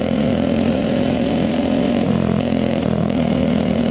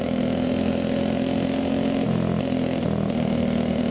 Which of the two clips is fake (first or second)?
first